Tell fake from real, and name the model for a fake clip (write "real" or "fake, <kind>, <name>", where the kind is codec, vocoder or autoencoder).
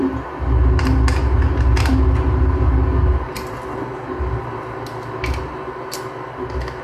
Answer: real